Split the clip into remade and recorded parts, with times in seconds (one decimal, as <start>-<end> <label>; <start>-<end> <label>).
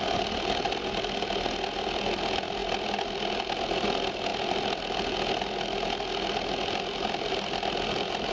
0.0-8.3 recorded